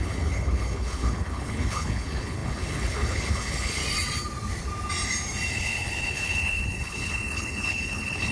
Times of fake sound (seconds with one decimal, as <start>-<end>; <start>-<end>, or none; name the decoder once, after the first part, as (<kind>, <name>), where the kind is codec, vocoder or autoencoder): 0.0-3.8 (codec, HILCodec); 5.5-8.3